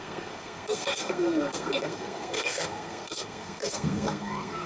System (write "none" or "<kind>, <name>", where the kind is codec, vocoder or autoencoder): codec, SNAC